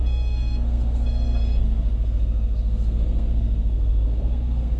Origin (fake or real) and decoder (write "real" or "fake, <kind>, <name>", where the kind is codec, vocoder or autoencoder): fake, codec, SNAC